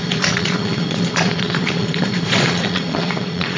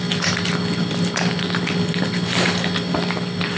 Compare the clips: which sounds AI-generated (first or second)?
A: first